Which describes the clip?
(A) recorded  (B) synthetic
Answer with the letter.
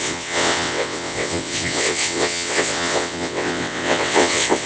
B